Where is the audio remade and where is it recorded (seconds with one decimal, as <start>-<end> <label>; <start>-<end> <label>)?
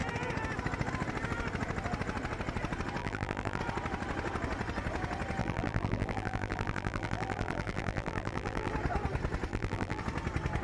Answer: 0.0-3.0 recorded; 3.0-3.6 remade; 3.6-5.4 recorded; 5.4-8.7 remade; 8.7-9.5 recorded; 9.5-10.0 remade; 10.0-10.6 recorded